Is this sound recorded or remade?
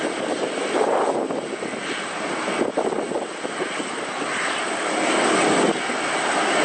recorded